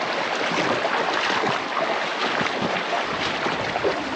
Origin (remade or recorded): recorded